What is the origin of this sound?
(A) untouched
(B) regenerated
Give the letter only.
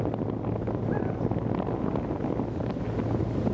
A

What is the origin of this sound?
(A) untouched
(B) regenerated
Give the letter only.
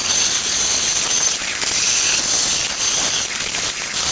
A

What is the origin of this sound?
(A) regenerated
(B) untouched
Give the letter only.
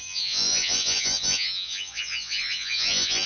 A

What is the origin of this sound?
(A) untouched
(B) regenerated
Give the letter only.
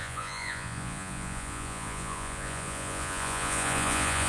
B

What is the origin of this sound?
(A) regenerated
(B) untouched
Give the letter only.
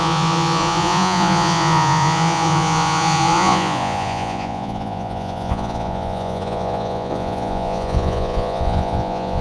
A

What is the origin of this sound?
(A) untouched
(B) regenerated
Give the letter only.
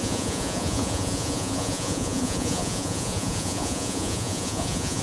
B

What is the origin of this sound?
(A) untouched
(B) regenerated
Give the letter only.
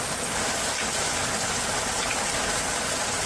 A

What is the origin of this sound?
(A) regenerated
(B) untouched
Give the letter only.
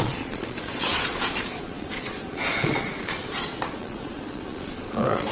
A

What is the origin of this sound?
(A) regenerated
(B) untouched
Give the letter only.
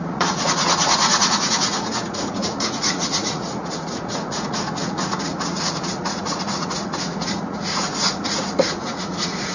A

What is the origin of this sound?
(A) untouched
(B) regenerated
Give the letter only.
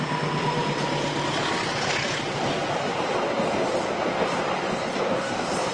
A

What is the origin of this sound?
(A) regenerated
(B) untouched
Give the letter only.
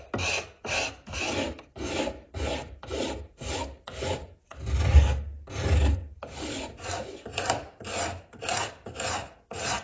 B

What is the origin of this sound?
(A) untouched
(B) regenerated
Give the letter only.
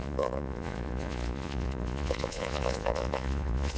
B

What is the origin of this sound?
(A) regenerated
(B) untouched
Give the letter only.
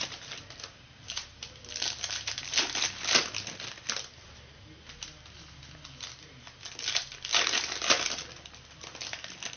B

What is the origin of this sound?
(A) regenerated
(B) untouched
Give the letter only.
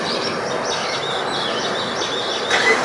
B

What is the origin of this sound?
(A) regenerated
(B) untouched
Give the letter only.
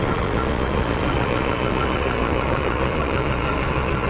A